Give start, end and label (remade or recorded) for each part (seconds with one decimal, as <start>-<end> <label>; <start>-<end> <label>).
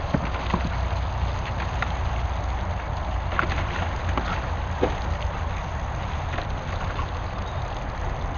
0.0-8.4 recorded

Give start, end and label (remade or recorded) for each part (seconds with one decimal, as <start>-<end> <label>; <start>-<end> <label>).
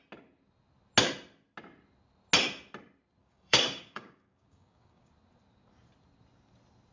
0.0-3.2 recorded; 3.2-5.1 remade; 5.1-6.9 recorded